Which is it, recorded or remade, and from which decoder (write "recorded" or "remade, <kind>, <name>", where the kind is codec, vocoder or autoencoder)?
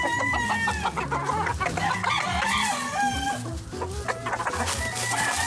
recorded